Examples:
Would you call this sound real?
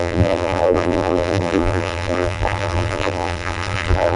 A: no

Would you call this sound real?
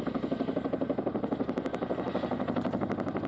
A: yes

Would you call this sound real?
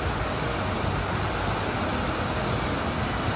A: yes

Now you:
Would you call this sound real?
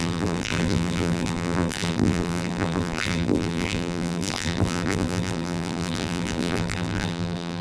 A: no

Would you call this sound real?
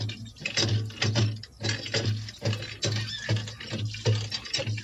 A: yes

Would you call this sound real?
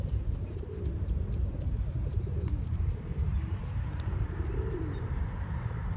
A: no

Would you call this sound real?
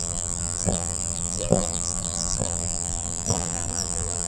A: no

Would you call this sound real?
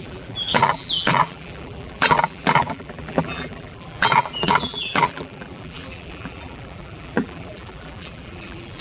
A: no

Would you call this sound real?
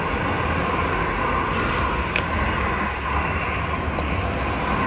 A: yes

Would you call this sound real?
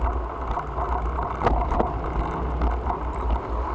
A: yes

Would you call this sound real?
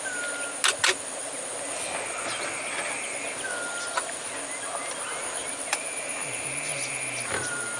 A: yes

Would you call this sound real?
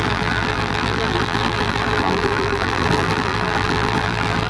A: no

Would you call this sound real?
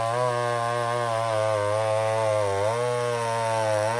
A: yes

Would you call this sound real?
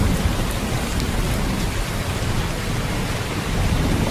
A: yes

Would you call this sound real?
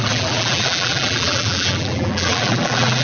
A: no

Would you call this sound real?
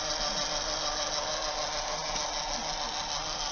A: yes